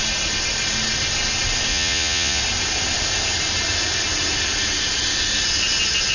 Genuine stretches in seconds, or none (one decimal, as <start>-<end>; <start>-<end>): 0.0-1.7; 2.4-6.1